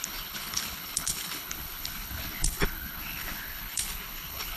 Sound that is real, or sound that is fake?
fake